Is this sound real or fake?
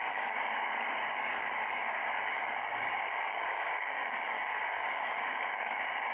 fake